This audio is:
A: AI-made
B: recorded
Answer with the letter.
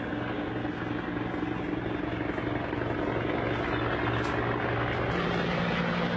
B